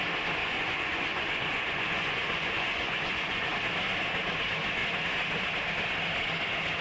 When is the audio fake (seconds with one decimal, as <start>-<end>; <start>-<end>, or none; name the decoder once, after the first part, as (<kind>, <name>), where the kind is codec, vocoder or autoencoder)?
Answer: 0.4-3.5 (vocoder, Vocos)